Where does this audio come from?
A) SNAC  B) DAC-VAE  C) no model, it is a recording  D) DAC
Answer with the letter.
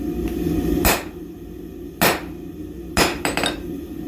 C